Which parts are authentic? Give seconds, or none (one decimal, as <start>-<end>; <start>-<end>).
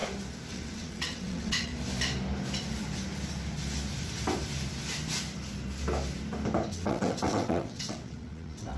0.0-0.5; 1.7-6.7